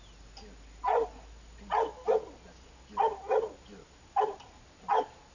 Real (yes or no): yes